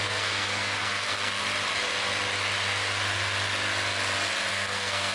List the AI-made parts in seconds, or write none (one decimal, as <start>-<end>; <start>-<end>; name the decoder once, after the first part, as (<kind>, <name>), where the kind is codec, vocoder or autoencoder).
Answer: 0.0-1.4 (codec, SNAC); 4.5-5.1